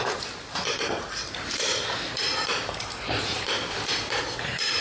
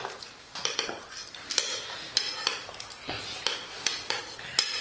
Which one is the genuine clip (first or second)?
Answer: second